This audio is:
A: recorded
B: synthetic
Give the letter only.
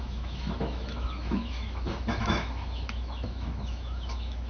B